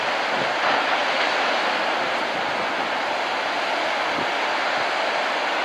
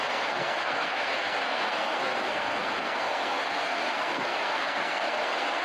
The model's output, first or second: second